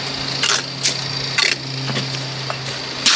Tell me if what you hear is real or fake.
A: real